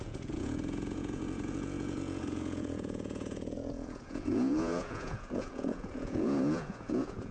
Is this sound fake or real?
fake